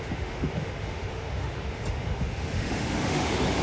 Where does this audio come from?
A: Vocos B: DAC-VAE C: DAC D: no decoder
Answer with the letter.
B